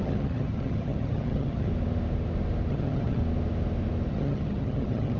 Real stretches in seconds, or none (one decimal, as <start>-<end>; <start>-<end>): 1.7-2.7; 3.2-4.1